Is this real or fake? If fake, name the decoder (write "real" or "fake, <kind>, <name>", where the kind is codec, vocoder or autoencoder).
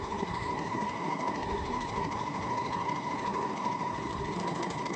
fake, codec, SNAC